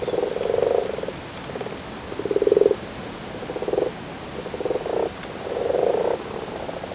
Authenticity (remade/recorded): recorded